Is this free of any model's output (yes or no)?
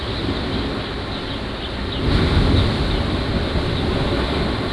yes